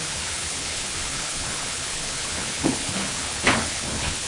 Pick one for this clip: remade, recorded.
remade